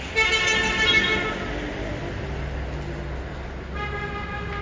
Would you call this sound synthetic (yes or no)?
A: no